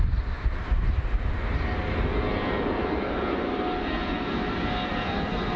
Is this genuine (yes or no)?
yes